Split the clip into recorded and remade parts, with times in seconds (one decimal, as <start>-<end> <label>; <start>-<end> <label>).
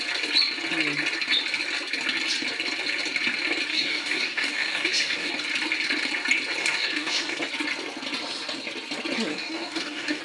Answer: 0.0-3.7 recorded; 3.7-5.3 remade; 5.3-6.6 recorded; 6.6-7.4 remade; 7.4-9.3 recorded; 9.3-10.2 remade